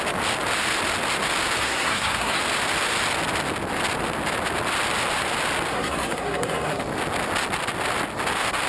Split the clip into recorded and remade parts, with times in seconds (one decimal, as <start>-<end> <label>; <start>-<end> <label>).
0.0-1.6 recorded; 1.6-2.4 remade; 2.4-5.7 recorded; 5.7-6.8 remade; 6.8-8.7 recorded